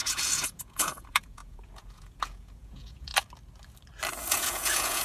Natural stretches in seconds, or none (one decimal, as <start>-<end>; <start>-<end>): 3.1-4.2